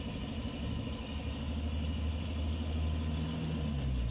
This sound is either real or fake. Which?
real